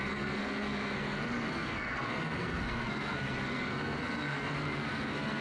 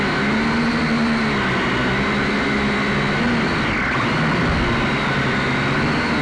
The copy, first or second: first